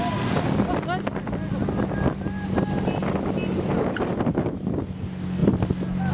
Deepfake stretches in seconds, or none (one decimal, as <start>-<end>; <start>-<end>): none